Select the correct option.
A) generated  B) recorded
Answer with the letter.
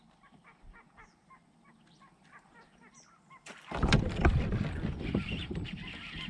A